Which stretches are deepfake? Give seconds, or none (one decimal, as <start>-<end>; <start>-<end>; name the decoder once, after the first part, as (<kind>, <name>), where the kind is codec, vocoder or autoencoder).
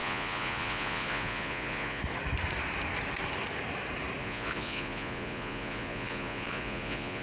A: 0.0-2.0 (vocoder, Vocos); 4.2-7.2